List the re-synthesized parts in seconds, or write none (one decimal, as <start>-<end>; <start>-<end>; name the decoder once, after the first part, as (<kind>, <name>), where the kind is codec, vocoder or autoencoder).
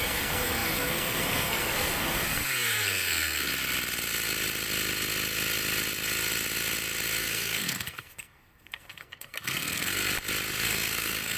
0.0-3.5 (codec, SNAC); 7.2-10.0; 10.5-11.4